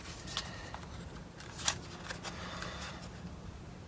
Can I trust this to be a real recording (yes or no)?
yes